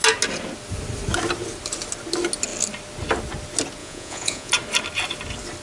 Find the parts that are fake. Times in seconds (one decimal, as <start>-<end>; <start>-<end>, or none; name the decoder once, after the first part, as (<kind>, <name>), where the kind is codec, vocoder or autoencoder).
3.8-4.5 (vocoder, Vocos)